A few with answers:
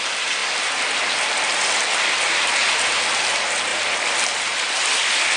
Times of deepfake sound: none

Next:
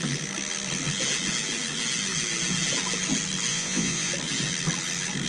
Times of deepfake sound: 3.5-4.1 (vocoder, Vocos)

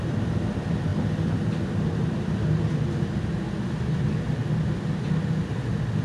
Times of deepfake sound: none

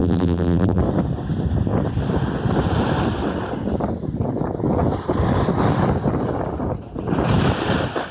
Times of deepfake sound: 0.0-0.8 (vocoder, BigVGAN v2)